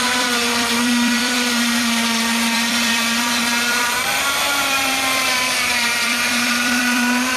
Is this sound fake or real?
fake